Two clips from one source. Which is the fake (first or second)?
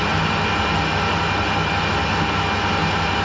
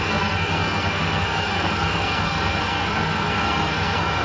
second